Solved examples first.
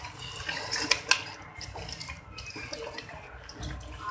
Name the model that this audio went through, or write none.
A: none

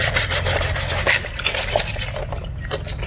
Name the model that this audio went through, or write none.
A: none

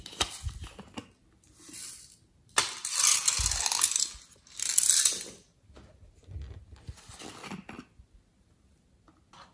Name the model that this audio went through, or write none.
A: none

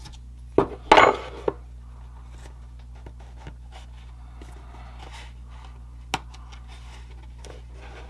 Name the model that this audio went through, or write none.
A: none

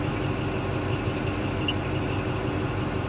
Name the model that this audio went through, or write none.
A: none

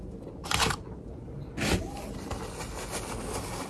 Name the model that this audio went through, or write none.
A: none